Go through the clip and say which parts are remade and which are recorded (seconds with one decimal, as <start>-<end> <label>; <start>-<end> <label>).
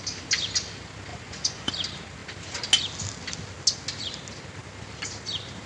0.0-1.1 recorded; 1.1-1.7 remade; 1.7-5.7 recorded